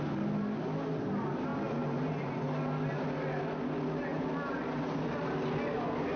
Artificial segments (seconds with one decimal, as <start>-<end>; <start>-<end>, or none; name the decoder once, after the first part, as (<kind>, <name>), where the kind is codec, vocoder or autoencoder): none